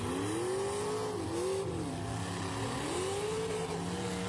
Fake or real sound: real